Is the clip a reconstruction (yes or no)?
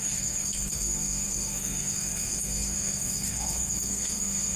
yes